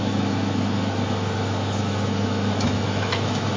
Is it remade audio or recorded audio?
remade